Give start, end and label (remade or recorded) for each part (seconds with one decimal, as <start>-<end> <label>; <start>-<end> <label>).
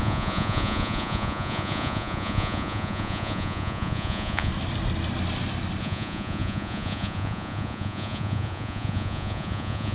0.0-4.5 remade; 4.5-5.8 recorded; 5.8-9.9 remade